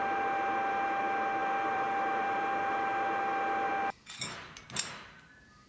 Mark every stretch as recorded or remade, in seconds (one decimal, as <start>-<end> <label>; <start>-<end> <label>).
0.0-1.4 recorded; 1.4-3.7 remade; 3.7-5.7 recorded